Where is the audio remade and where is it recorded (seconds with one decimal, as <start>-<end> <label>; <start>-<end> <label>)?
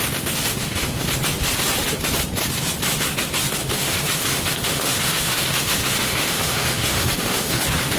0.0-0.5 recorded; 0.5-1.0 remade; 1.0-3.6 recorded; 3.6-7.6 remade; 7.6-8.0 recorded